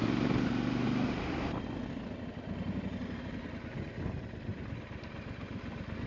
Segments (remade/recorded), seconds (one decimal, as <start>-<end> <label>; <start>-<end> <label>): 0.0-6.1 recorded